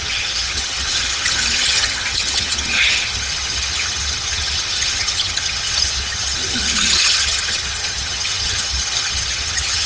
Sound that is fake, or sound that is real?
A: fake